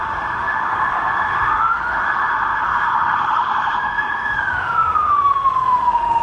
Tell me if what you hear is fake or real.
fake